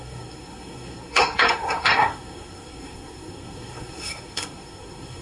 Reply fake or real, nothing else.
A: fake